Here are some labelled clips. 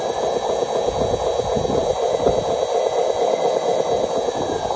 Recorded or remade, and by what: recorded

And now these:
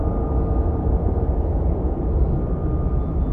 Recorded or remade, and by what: recorded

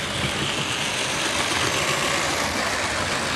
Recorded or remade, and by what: recorded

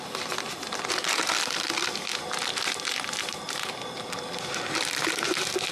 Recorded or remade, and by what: recorded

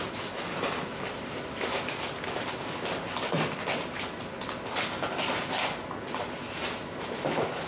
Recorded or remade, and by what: recorded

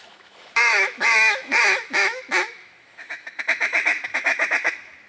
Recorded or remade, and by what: remade, autoencoder, DAC-VAE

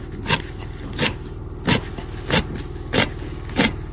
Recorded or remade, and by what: recorded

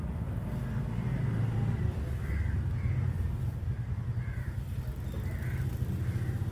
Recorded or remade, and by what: recorded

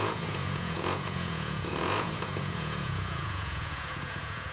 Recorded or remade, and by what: remade, vocoder, Vocos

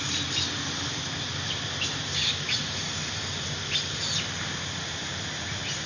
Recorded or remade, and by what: recorded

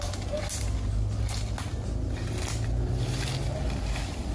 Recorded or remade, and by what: recorded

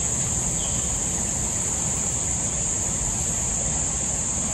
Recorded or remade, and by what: recorded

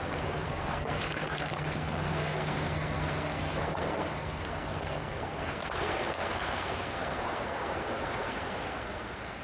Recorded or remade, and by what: remade, codec, SNAC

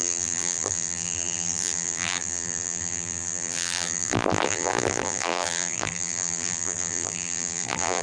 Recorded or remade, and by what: remade, vocoder, BigVGAN v2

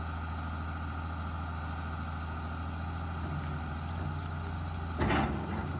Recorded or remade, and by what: recorded